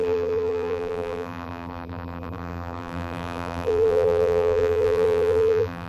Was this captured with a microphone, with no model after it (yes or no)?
no